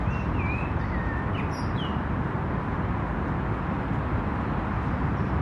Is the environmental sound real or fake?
real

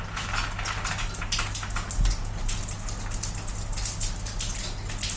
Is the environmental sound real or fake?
real